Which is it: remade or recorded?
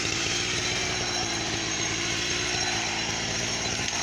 remade